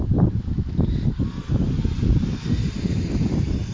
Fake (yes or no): no